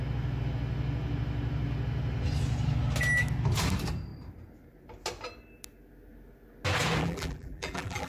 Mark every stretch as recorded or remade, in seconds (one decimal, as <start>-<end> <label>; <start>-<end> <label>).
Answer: 0.0-7.0 recorded; 7.0-8.1 remade